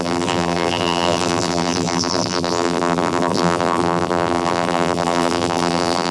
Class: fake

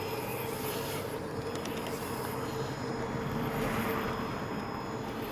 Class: real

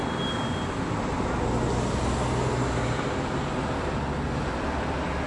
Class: real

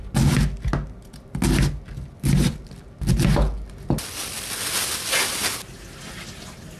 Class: real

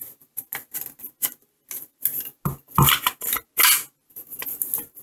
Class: real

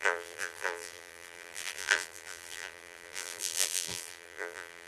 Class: fake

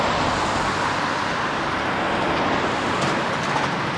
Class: real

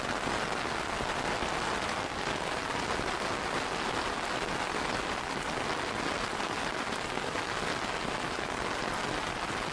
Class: real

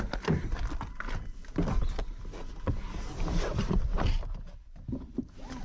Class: fake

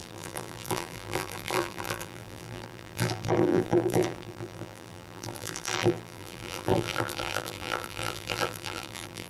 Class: fake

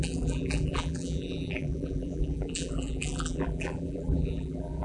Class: fake